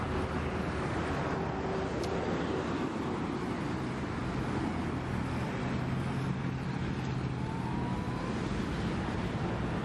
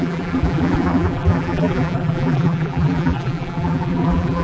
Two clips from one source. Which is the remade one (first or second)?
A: second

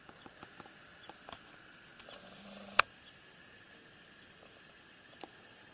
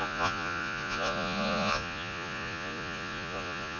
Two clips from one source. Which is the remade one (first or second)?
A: second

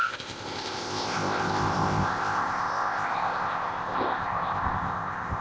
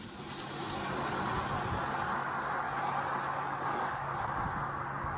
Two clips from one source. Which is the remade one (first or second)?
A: first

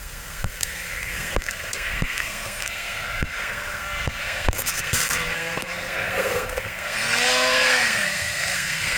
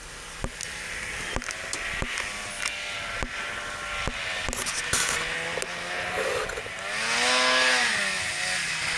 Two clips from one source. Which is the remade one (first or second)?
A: first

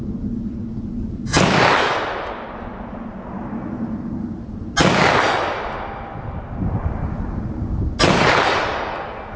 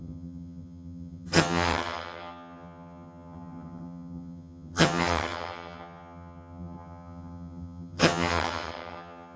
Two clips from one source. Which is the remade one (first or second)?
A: second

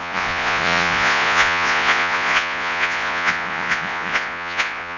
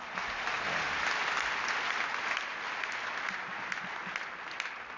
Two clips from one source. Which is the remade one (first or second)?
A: first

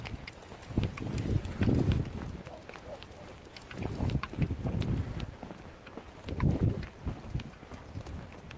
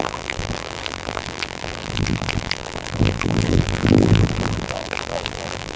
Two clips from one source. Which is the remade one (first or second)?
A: second